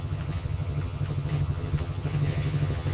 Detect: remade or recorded remade